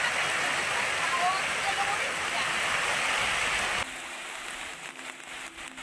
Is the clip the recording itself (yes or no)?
yes